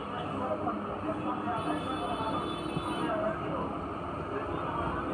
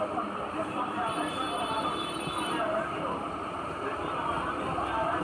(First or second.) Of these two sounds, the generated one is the second